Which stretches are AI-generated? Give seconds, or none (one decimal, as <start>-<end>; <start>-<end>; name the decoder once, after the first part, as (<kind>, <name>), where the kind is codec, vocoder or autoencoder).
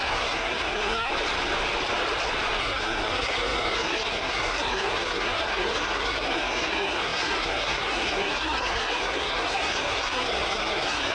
0.0-1.1 (codec, SNAC); 2.6-11.1